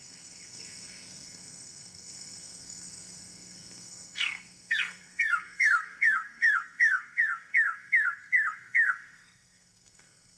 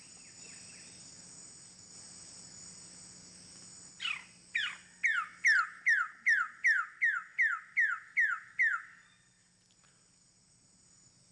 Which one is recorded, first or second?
second